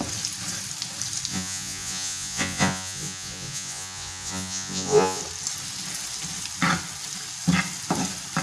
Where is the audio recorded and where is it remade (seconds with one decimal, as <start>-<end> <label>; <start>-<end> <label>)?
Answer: 0.0-1.3 recorded; 1.3-5.2 remade; 5.2-8.4 recorded